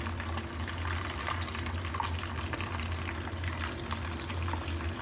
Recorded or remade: recorded